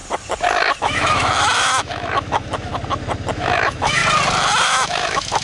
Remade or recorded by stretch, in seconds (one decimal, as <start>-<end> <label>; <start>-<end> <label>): 0.0-0.8 recorded; 0.8-2.7 remade; 2.7-3.3 recorded; 3.3-4.0 remade; 4.0-4.6 recorded; 4.6-5.4 remade